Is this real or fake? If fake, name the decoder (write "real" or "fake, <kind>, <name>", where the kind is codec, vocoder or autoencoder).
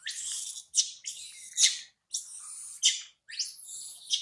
real